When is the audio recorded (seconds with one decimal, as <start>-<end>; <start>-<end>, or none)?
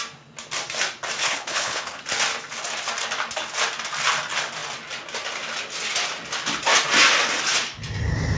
0.0-1.2; 2.0-8.4